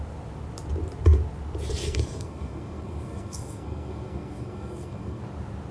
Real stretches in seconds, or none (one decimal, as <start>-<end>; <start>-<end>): 0.0-1.8; 5.2-5.7